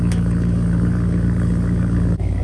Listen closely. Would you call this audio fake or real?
fake